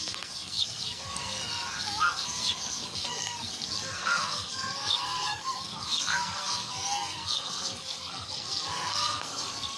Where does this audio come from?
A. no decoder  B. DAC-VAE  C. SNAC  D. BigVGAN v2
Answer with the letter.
C